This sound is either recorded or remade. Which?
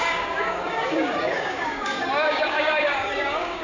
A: remade